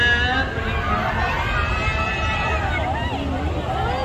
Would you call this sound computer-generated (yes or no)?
no